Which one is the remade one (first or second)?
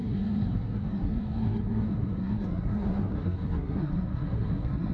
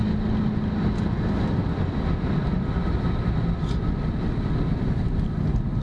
first